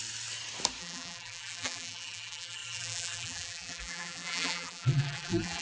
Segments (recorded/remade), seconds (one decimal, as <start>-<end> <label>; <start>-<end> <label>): 0.0-0.8 recorded; 0.8-5.6 remade